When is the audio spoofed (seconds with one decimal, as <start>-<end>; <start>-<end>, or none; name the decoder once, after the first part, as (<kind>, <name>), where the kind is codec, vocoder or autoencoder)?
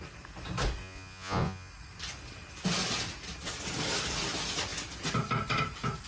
0.8-1.7 (vocoder, Vocos)